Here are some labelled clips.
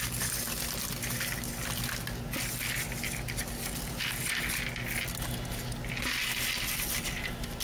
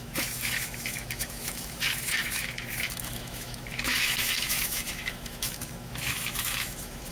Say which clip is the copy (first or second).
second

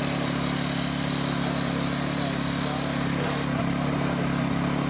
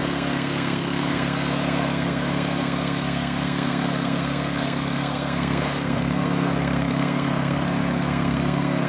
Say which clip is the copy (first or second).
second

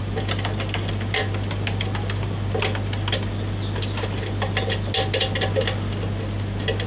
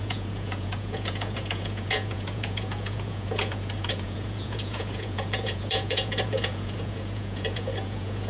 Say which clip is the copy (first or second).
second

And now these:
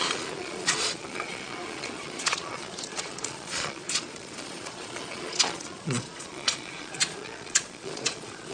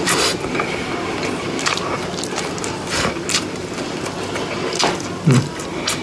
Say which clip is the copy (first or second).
first